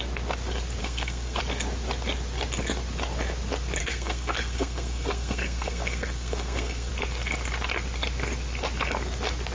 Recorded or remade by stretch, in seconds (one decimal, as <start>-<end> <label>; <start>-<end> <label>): 0.0-0.8 recorded; 0.8-1.4 remade; 1.4-3.8 recorded; 3.8-6.9 remade; 6.9-9.5 recorded